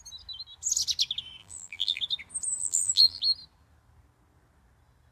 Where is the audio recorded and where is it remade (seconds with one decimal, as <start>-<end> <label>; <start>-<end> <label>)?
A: 0.0-1.4 recorded; 1.4-2.0 remade; 2.0-2.6 recorded; 2.6-3.2 remade; 3.2-5.1 recorded